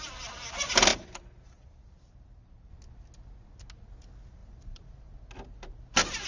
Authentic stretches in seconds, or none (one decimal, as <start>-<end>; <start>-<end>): 0.0-0.9; 2.7-4.4; 5.2-6.3